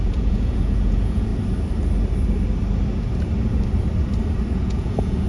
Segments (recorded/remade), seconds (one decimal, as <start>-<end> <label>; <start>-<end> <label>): 0.0-1.3 remade; 1.3-4.5 recorded; 4.5-5.3 remade